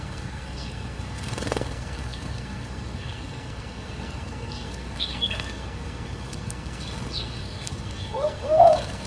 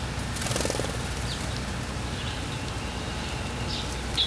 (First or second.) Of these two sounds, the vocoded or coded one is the first